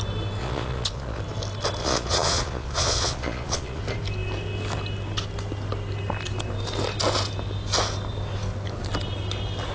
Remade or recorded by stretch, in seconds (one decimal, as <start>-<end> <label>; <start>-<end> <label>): 0.0-0.4 recorded; 0.4-1.2 remade; 1.2-1.8 recorded; 1.8-3.8 remade; 3.8-9.7 recorded